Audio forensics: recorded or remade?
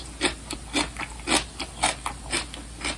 recorded